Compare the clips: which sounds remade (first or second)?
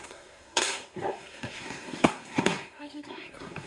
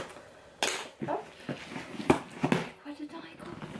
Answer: first